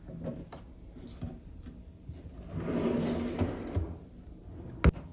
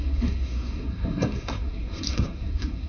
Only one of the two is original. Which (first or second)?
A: first